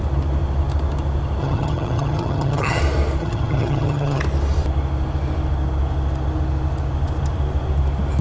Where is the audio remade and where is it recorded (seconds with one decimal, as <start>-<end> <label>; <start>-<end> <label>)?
0.0-1.4 recorded; 1.4-2.8 remade; 2.8-3.2 recorded; 3.2-4.2 remade; 4.2-8.2 recorded